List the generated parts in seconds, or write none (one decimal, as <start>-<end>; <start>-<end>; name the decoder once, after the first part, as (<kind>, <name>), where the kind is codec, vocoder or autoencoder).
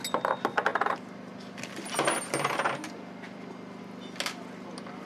none